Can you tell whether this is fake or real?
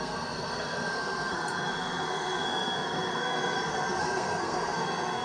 fake